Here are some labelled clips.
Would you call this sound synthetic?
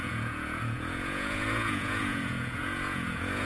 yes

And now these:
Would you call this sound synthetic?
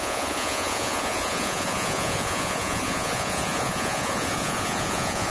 yes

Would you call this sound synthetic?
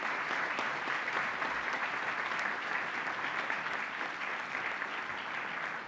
no